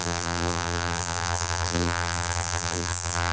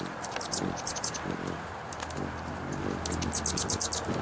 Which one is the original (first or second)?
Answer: second